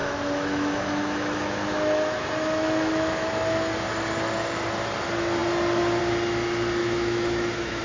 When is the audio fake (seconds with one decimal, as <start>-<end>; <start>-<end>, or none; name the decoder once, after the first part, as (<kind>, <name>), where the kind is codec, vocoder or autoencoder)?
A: 0.0-3.3 (autoencoder, DAC-VAE); 6.8-7.8